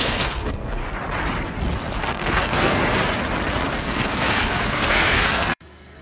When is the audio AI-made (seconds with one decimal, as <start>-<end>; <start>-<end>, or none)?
0.0-0.8; 2.1-2.8; 3.8-6.0